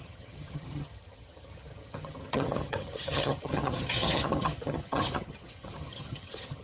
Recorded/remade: remade